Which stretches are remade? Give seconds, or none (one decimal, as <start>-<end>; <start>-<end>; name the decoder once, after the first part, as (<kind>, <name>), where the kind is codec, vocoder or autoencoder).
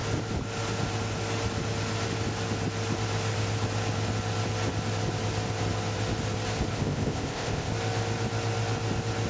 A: 6.7-7.7 (codec, ZipCodec)